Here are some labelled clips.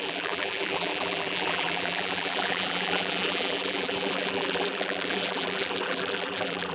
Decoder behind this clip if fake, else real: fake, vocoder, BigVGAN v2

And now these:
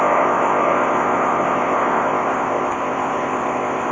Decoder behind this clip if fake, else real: fake, codec, ZipCodec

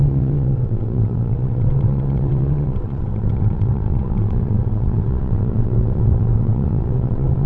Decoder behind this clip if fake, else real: fake, vocoder, WaveNeXt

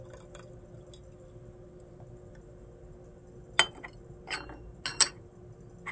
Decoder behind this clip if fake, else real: real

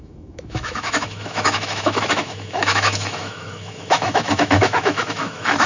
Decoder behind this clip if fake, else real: fake, autoencoder, DAC-VAE